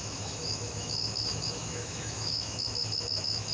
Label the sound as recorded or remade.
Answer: remade